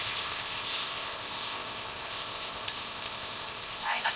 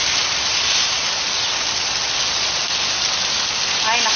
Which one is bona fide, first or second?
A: second